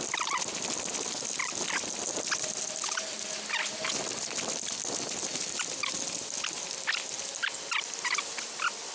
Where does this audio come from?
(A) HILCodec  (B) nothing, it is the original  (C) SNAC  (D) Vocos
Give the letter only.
B